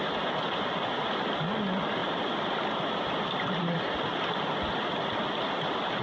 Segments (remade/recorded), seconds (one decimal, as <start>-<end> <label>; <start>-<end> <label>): 0.0-2.0 recorded; 2.0-4.3 remade; 4.3-6.0 recorded